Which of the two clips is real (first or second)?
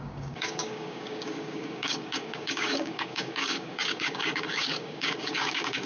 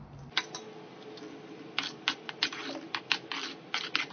second